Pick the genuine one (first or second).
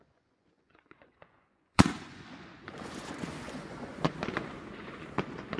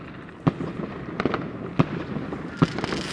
second